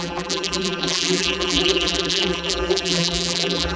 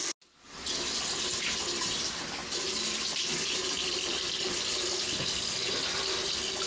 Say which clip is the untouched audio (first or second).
second